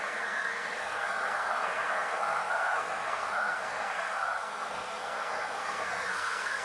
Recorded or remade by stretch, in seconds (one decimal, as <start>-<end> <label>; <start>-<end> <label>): 0.0-6.6 remade

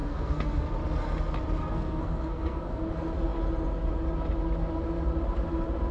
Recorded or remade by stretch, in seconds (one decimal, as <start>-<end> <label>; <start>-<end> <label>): 0.0-0.6 remade; 0.6-1.6 recorded; 1.6-2.9 remade; 2.9-5.9 recorded

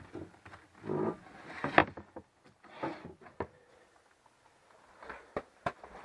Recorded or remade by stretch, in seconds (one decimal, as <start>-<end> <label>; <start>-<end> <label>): 0.0-6.0 recorded

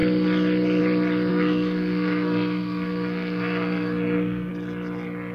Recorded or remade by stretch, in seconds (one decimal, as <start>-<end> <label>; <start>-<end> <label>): 0.0-1.3 recorded; 1.3-4.5 remade; 4.5-5.3 recorded

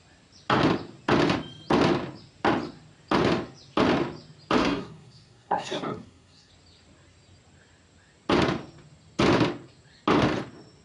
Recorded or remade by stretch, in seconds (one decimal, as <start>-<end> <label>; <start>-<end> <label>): 0.0-4.6 recorded; 4.6-6.5 remade; 6.5-10.8 recorded

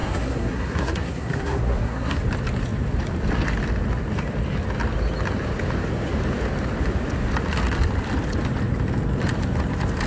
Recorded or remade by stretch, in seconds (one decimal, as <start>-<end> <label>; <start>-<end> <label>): 0.0-2.2 remade; 2.2-10.1 recorded